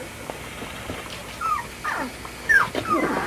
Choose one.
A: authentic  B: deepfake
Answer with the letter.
A